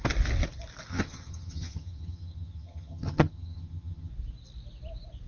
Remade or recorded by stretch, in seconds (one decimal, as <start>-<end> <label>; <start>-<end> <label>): 0.0-0.9 recorded; 0.9-4.1 remade; 4.1-5.3 recorded